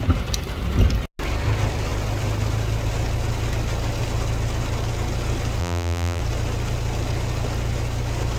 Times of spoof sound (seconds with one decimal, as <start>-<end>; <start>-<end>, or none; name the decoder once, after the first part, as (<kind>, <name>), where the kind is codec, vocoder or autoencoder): 5.6-6.2 (vocoder, BigVGAN v2)